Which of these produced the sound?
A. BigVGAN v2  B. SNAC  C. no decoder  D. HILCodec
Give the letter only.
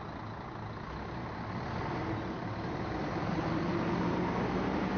C